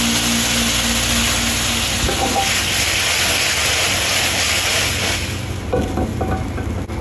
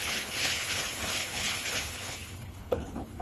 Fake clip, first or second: second